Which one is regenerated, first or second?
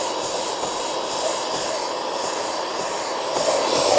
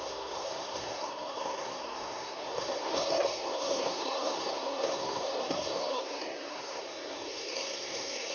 second